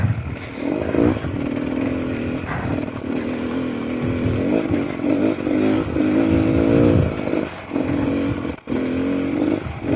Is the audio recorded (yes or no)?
yes